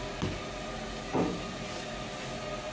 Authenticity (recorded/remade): recorded